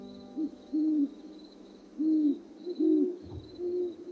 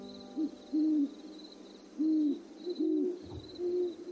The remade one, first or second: first